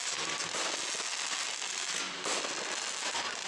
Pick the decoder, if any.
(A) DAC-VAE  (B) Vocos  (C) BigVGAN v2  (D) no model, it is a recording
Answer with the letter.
D